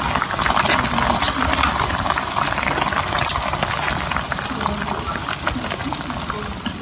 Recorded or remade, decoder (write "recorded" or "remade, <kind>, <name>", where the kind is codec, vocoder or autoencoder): recorded